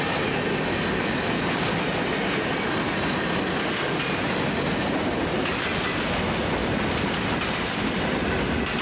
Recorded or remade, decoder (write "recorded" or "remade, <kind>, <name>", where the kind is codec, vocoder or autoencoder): recorded